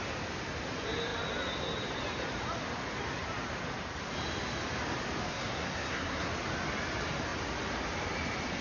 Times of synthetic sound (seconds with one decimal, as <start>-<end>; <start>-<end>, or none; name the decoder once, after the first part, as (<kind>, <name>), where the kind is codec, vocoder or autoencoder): 5.3-6.3 (codec, SNAC)